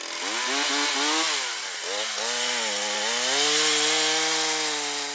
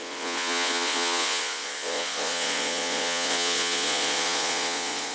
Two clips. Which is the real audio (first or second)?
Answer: first